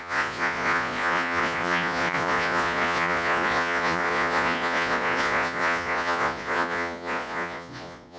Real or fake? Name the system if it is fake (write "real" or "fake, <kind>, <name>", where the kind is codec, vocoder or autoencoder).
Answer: fake, vocoder, Vocos